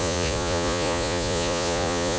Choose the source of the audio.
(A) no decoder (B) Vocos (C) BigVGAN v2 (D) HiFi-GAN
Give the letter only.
B